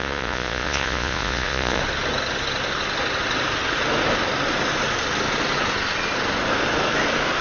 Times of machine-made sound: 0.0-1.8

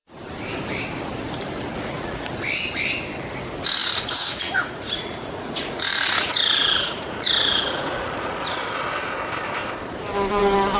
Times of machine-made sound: 1.7-2.3; 3.8-8.6

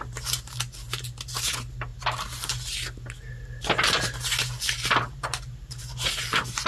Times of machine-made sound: none

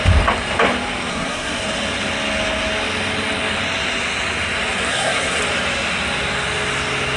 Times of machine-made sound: 1.1-1.6; 4.9-5.4